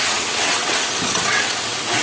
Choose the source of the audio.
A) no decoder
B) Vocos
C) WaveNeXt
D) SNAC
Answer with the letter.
C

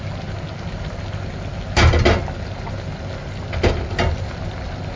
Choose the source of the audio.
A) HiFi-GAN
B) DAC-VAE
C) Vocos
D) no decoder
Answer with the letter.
D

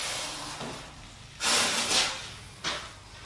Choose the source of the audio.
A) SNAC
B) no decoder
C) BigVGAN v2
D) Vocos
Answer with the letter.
B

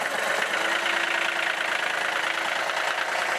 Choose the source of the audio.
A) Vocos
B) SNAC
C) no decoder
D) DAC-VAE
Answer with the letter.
C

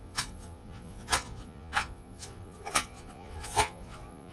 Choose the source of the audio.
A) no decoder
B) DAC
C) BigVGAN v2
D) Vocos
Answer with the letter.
D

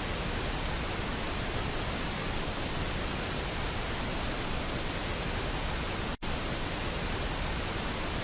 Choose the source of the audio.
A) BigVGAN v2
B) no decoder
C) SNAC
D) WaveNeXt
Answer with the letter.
B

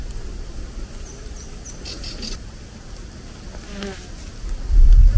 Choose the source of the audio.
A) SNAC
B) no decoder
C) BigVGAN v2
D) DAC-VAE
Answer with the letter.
B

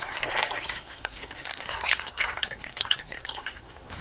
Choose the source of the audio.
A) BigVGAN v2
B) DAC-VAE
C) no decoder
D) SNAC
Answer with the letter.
D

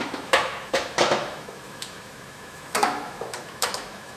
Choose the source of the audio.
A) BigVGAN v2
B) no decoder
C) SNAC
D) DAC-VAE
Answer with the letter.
D